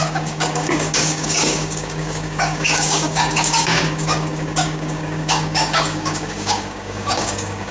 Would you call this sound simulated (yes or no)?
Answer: yes